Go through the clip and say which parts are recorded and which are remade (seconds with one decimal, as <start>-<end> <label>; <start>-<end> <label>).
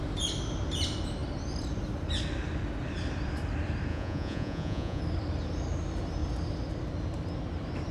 0.0-3.9 recorded; 3.9-5.0 remade; 5.0-7.9 recorded